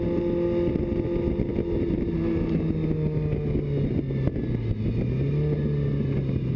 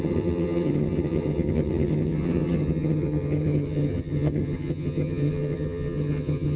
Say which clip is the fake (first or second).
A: second